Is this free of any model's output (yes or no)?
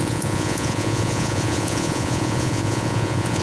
no